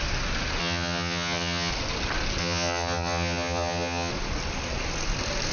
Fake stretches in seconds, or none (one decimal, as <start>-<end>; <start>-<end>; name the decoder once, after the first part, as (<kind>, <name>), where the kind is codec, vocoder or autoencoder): 0.6-1.7 (vocoder, HiFi-GAN); 2.4-4.1